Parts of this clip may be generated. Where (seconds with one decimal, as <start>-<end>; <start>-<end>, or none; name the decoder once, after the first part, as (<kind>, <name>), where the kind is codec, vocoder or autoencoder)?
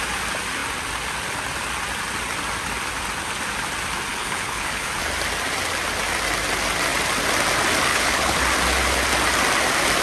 4.1-4.9 (codec, HILCodec); 7.9-8.4